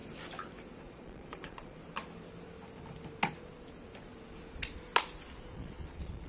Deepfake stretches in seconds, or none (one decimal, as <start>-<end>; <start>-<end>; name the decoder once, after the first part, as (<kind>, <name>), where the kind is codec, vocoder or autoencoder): 0.8-1.8 (vocoder, Vocos); 5.5-6.3